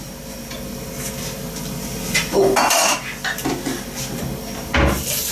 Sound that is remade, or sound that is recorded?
recorded